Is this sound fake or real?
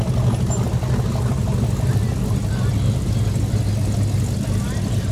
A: real